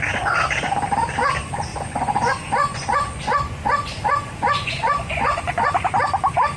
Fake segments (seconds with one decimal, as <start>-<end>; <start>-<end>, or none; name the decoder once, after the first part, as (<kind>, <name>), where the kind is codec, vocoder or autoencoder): 1.7-5.7 (vocoder, Vocos)